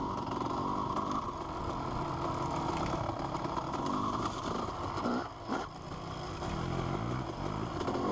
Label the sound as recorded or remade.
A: recorded